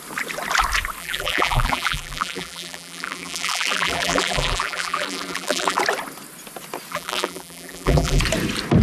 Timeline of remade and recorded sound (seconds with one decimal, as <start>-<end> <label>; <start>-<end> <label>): 0.0-1.0 recorded; 1.0-5.8 remade; 5.8-6.9 recorded; 6.9-8.2 remade; 8.2-8.8 recorded